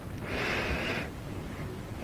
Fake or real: real